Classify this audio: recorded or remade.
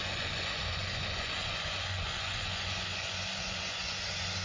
remade